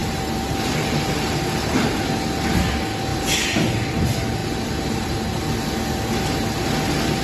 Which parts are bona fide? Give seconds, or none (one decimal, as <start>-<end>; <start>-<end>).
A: 1.1-3.1; 3.6-4.4; 5.4-7.2